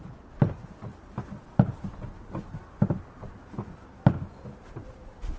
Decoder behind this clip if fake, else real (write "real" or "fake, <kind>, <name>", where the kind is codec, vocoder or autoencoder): real